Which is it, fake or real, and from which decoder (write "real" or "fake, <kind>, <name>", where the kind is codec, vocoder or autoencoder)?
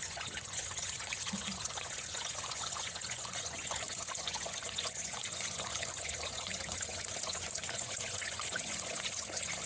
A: fake, vocoder, Vocos